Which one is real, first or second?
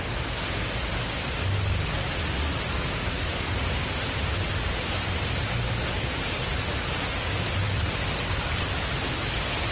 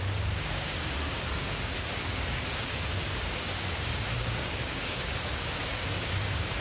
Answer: first